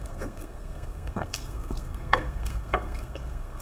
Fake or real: fake